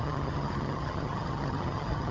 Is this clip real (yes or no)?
no